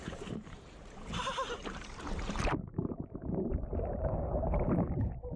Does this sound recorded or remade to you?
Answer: remade